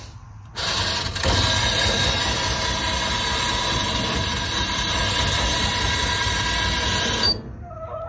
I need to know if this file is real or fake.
real